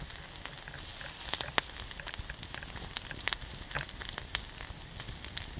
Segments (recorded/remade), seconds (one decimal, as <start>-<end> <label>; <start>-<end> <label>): 0.0-5.6 recorded